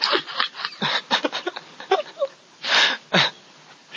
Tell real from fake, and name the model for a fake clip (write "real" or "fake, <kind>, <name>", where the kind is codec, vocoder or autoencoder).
real